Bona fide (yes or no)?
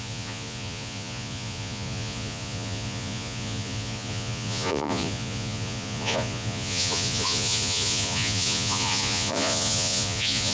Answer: no